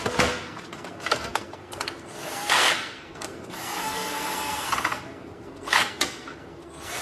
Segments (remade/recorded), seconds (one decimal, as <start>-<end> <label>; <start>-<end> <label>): 0.0-7.0 remade